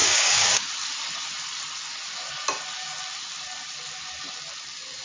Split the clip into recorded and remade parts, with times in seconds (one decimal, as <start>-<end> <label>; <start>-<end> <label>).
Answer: 0.0-0.7 remade; 0.7-5.0 recorded